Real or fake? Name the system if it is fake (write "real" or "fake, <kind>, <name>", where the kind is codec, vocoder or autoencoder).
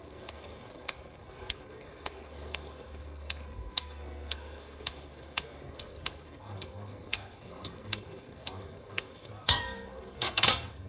fake, codec, SNAC